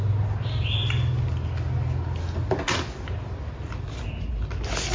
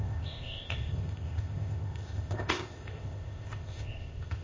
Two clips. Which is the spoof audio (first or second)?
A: second